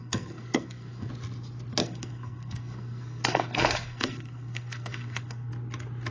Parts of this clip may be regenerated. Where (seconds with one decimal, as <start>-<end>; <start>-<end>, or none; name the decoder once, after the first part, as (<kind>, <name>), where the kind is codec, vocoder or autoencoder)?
0.0-1.1 (codec, SNAC); 1.8-5.5